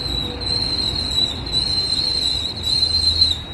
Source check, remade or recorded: recorded